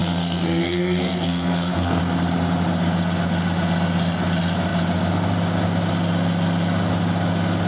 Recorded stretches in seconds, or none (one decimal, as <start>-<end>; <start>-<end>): 2.0-7.7